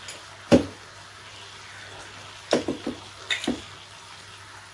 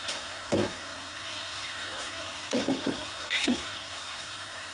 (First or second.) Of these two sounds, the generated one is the second